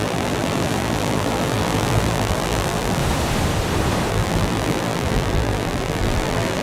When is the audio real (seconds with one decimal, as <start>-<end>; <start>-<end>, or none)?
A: 3.0-4.1